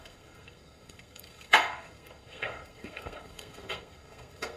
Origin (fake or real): fake